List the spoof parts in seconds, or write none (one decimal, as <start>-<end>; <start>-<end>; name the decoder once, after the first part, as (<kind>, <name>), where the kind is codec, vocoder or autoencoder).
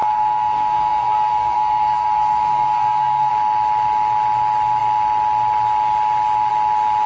0.0-3.3 (codec, SNAC)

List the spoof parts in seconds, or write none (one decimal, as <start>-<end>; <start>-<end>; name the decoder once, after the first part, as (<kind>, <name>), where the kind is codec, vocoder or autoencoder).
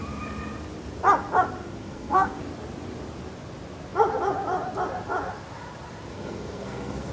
1.8-2.4 (codec, SNAC); 6.1-7.1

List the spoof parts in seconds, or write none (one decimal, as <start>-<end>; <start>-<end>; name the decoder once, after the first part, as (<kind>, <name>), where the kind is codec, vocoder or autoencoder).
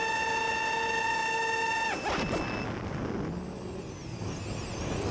none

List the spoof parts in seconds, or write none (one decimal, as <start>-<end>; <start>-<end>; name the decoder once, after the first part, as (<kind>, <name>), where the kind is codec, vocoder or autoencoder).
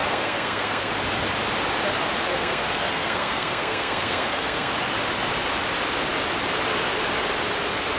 0.0-0.9 (codec, SNAC); 2.3-4.7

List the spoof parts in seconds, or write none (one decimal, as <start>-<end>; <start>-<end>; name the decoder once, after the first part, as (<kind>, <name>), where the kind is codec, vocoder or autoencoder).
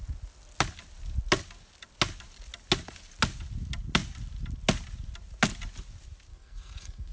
6.3-7.1 (codec, SNAC)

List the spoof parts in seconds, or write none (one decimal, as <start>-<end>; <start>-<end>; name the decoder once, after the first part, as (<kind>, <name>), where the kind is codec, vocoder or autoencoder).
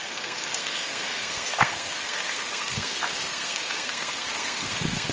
0.0-5.1 (codec, SNAC)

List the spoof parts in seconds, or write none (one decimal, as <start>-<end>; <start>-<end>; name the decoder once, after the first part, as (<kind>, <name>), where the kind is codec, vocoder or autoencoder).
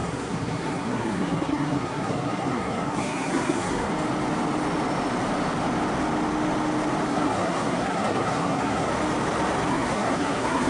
0.0-3.9 (codec, SNAC); 7.1-8.9; 9.7-10.7